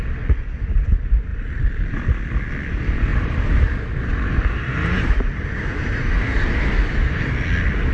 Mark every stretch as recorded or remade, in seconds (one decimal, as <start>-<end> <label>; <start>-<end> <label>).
0.0-3.1 recorded; 3.1-7.3 remade; 7.3-7.9 recorded